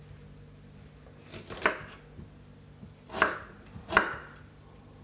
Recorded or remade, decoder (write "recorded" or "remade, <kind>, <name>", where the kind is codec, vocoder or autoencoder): recorded